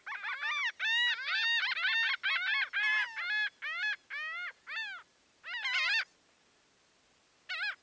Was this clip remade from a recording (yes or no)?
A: no